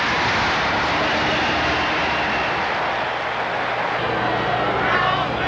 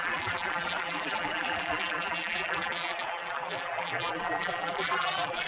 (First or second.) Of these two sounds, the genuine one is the first